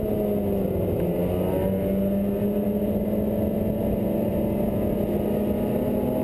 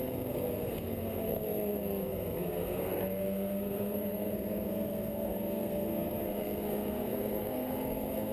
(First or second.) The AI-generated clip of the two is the second